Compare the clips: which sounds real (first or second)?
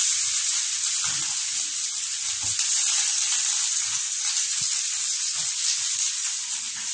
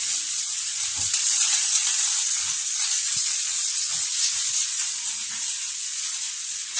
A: first